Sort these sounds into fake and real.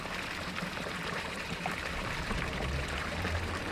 fake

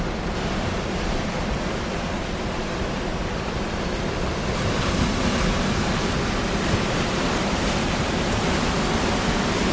real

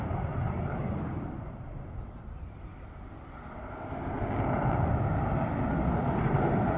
real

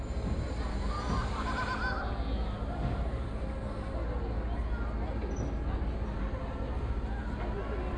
real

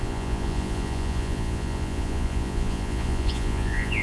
fake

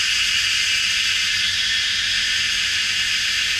real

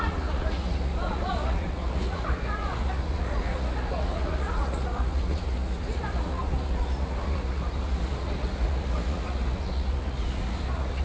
fake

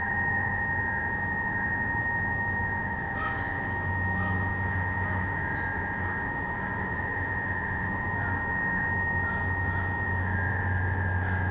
fake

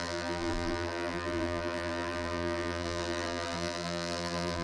fake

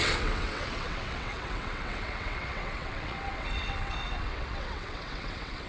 fake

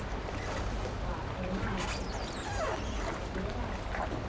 real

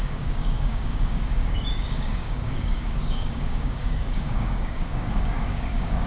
fake